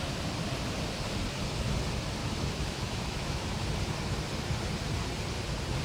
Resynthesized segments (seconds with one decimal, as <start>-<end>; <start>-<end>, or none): 2.2-3.5